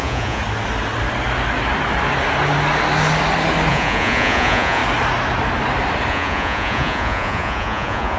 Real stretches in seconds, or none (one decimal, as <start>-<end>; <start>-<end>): 0.4-3.7; 4.8-6.1